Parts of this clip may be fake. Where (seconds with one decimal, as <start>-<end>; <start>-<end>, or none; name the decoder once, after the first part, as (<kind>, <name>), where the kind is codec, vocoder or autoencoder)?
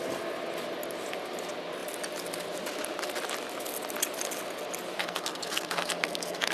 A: 5.0-6.5 (codec, SNAC)